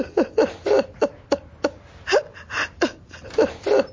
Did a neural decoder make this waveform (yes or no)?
no